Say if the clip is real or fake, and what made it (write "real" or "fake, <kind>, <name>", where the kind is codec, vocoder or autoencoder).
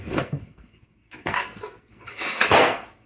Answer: fake, codec, SNAC